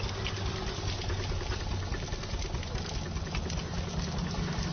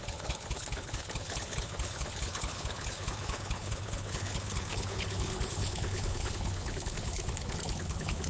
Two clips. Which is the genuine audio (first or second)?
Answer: first